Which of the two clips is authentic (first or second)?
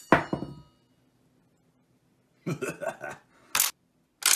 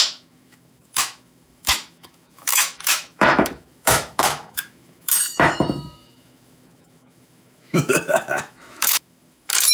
first